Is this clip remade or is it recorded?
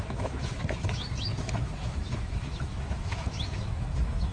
remade